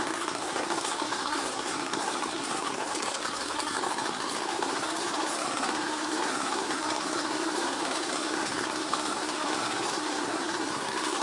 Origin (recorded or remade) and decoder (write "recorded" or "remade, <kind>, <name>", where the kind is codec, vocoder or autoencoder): remade, codec, SNAC